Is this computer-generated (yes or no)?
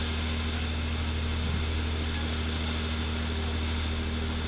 no